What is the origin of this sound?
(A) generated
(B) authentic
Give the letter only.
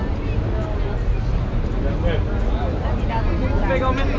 B